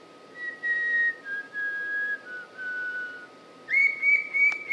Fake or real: real